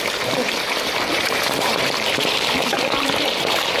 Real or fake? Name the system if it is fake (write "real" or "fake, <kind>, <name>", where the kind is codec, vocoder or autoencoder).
fake, vocoder, BigVGAN v2